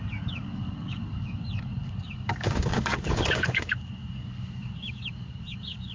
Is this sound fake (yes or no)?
yes